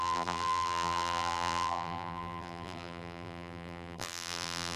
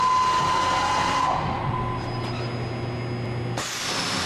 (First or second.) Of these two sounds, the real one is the second